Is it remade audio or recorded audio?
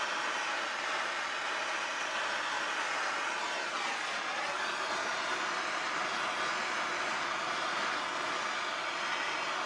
recorded